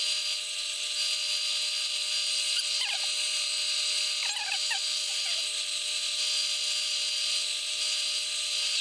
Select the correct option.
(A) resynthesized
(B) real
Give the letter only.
B